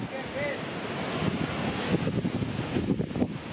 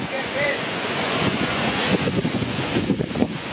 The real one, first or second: first